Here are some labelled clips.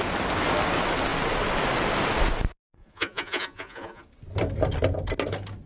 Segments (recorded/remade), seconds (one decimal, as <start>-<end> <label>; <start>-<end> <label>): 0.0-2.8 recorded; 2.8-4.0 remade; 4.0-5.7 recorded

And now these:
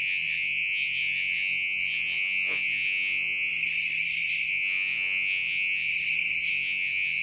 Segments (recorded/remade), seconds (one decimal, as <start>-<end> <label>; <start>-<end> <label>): 0.0-3.5 remade; 3.5-4.5 recorded; 4.5-5.9 remade; 5.9-6.5 recorded; 6.5-7.2 remade

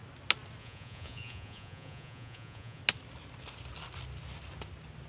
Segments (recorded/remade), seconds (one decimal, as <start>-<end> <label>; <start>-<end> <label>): 0.0-0.6 recorded; 0.6-2.8 remade; 2.8-5.1 recorded

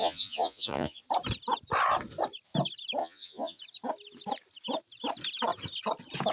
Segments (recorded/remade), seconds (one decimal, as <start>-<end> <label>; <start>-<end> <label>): 0.0-1.0 remade; 1.0-3.0 recorded; 3.0-3.6 remade; 3.6-6.3 recorded

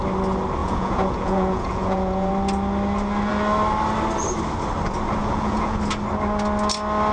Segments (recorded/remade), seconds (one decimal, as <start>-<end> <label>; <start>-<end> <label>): 0.0-0.6 recorded; 0.6-2.3 remade; 2.3-5.2 recorded; 5.2-5.8 remade; 5.8-7.1 recorded

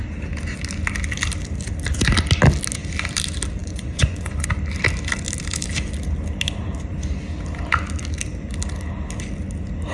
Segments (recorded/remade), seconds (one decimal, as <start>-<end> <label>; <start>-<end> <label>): 0.0-3.6 recorded; 3.6-4.5 remade; 4.5-9.9 recorded

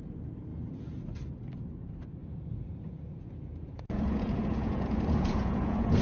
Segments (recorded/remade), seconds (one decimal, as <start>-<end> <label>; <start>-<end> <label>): 0.0-2.2 recorded; 2.2-6.0 remade

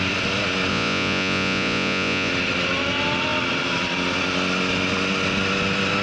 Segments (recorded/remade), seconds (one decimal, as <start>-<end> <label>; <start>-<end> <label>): 0.0-0.7 recorded; 0.7-2.3 remade; 2.3-6.0 recorded